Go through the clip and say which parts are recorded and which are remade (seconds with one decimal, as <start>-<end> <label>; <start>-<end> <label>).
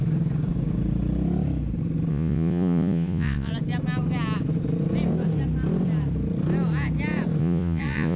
0.0-2.1 recorded; 2.1-3.5 remade; 3.5-7.4 recorded; 7.4-8.2 remade